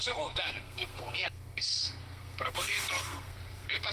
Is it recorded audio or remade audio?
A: remade